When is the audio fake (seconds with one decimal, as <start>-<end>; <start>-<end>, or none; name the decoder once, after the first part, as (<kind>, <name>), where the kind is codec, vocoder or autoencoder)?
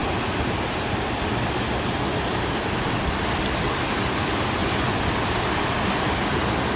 4.6-5.1 (vocoder, Vocos)